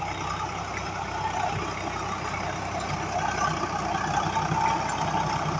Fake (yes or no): no